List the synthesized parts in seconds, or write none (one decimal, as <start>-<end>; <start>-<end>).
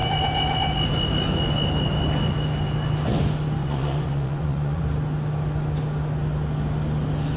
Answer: 3.6-4.8